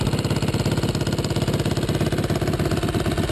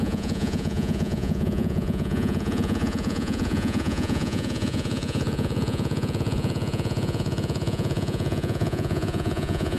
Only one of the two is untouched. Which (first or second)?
first